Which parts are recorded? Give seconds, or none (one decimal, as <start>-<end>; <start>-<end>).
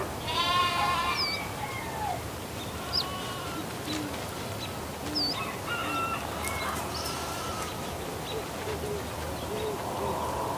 0.0-10.6